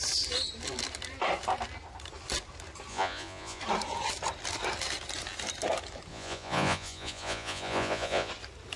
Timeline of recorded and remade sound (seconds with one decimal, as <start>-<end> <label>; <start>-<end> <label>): 0.0-2.9 recorded; 2.9-3.6 remade; 3.6-6.1 recorded; 6.1-8.3 remade; 8.3-8.8 recorded